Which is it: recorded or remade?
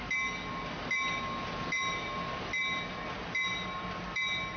recorded